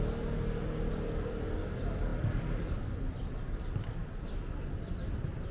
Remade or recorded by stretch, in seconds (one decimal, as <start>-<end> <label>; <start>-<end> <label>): 0.0-5.5 recorded